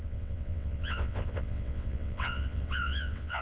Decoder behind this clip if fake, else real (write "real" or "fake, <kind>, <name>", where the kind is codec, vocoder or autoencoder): fake, vocoder, WaveNeXt